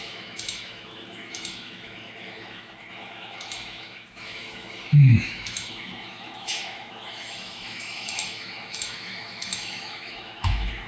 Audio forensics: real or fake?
fake